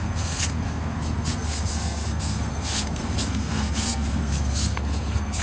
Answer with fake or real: fake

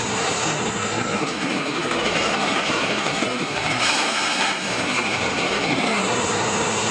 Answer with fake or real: fake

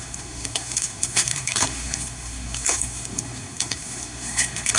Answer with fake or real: fake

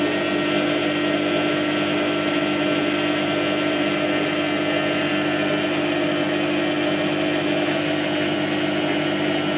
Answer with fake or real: real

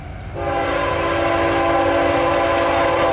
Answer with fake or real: real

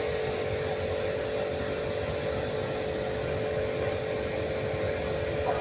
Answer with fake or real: real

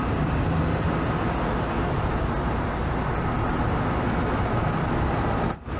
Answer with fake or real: real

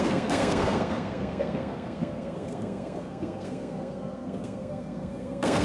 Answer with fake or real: fake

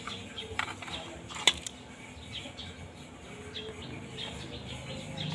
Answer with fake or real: real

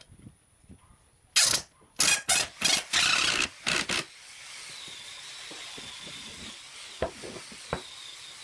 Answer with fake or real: real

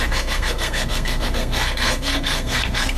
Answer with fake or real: fake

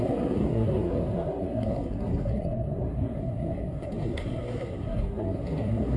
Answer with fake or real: fake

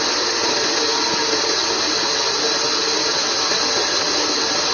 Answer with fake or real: real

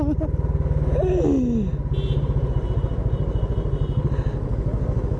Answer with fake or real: real